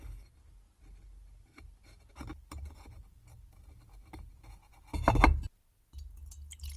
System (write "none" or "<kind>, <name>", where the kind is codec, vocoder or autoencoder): none